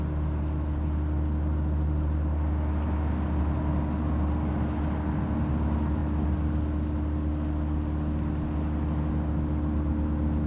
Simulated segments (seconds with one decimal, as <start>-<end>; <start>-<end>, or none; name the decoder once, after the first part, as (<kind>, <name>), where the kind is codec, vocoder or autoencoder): none